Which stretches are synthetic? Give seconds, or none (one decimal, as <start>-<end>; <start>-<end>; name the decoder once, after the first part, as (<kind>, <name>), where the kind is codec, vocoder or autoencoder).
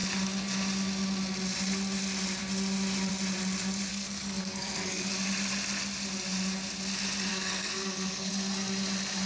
3.9-5.1 (codec, SNAC); 7.3-8.3